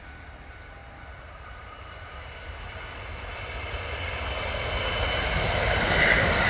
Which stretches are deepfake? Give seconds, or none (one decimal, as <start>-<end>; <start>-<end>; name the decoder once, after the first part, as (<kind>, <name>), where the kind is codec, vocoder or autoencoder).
none